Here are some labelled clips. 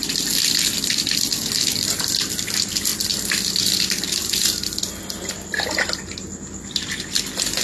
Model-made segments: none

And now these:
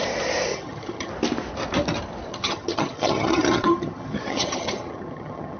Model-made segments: 0.5-1.1 (vocoder, HiFi-GAN); 2.3-5.6